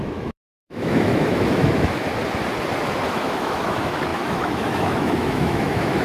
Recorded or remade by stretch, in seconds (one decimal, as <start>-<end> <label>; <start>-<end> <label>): 0.0-2.1 remade; 2.1-3.1 recorded; 3.1-6.0 remade